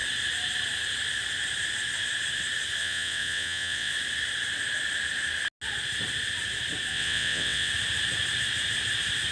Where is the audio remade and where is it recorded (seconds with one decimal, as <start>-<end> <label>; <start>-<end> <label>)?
0.0-2.8 recorded; 2.8-3.9 remade; 3.9-6.9 recorded; 6.9-7.7 remade; 7.7-9.3 recorded

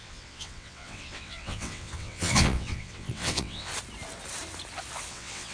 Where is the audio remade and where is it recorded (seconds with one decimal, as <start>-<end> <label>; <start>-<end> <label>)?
0.0-3.7 remade; 3.7-5.1 recorded; 5.1-5.5 remade

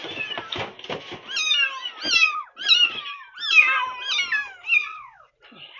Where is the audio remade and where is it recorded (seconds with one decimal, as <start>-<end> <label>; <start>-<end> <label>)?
0.0-4.8 recorded; 4.8-5.3 remade; 5.3-5.8 recorded

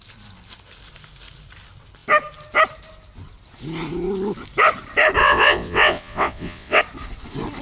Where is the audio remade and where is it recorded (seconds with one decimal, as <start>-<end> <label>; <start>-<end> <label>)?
0.0-5.2 recorded; 5.2-6.8 remade; 6.8-7.6 recorded

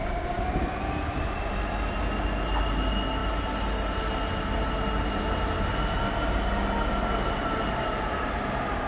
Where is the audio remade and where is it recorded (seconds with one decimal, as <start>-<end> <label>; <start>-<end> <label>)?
0.0-8.9 recorded

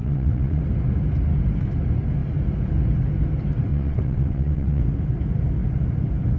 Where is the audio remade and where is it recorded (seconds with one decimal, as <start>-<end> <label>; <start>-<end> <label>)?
0.0-0.6 remade; 0.6-3.7 recorded; 3.7-4.8 remade; 4.8-6.4 recorded

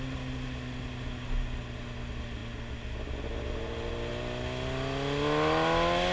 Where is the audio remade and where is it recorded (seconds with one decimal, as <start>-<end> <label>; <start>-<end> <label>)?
0.0-6.1 recorded